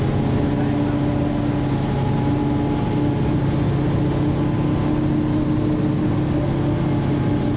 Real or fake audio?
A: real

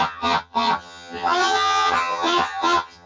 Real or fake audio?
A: fake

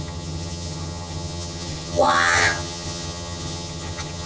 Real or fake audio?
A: fake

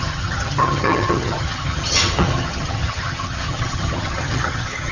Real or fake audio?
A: fake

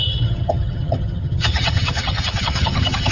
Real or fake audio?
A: fake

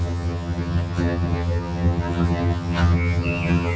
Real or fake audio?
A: fake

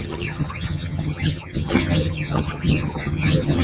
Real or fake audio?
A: fake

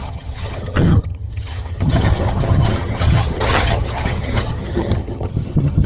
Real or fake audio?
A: fake